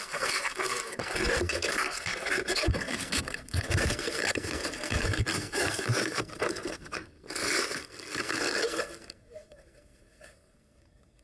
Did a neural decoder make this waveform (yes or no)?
yes